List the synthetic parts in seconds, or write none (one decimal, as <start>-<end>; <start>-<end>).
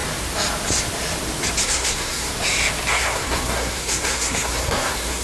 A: 1.6-2.3; 2.9-5.2